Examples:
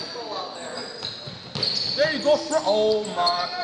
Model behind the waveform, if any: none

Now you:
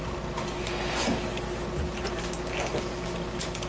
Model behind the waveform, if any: none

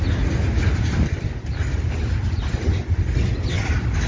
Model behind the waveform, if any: none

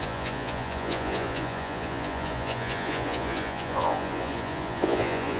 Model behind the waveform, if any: vocoder, Vocos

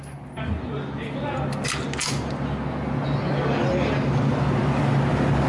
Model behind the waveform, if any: none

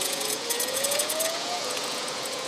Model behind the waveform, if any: vocoder, Vocos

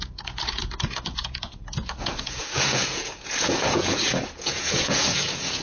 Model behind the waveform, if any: vocoder, Vocos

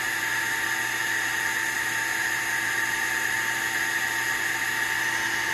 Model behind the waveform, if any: none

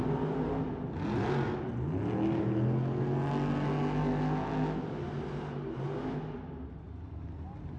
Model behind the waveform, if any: none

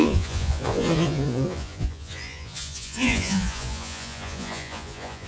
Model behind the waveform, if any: vocoder, Vocos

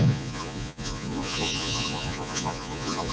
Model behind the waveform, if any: vocoder, Vocos